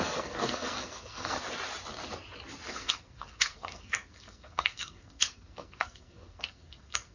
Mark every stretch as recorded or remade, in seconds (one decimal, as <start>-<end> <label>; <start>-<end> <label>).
0.0-1.4 remade; 1.4-2.7 recorded; 2.7-7.1 remade